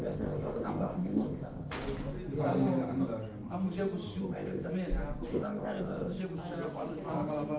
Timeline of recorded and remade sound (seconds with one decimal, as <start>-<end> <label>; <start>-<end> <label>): 0.0-1.7 remade; 1.7-4.2 recorded; 4.2-4.7 remade; 4.7-5.3 recorded; 5.3-6.2 remade; 6.2-7.6 recorded